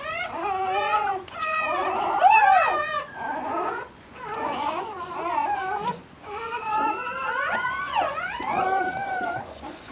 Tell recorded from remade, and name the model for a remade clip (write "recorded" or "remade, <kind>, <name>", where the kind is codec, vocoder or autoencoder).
remade, vocoder, Vocos